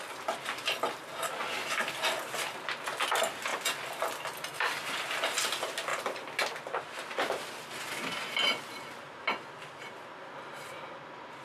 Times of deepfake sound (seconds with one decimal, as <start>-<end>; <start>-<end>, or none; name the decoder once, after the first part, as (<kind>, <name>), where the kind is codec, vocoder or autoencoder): none